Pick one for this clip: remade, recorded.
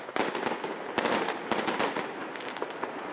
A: recorded